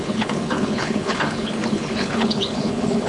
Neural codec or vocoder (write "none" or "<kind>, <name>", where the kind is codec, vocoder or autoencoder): codec, HILCodec